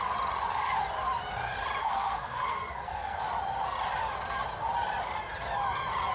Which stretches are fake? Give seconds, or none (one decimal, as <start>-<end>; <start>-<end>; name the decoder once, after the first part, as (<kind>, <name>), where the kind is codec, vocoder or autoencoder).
1.8-3.2 (codec, SNAC)